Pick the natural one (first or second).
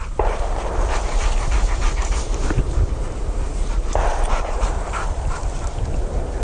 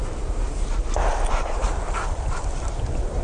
second